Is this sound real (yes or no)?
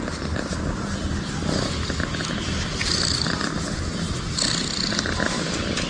yes